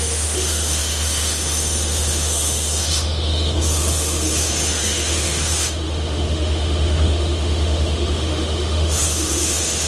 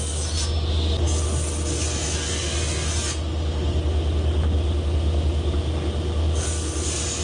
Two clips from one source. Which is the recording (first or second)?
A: second